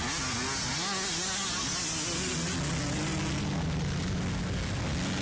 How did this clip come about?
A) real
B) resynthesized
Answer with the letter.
A